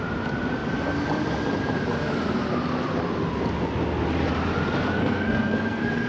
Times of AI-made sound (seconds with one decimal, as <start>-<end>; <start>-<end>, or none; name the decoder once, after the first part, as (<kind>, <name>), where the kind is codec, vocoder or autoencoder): 5.0-6.1 (codec, SNAC)